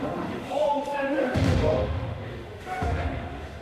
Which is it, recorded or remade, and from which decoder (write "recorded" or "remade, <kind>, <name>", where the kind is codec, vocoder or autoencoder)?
remade, autoencoder, DAC-VAE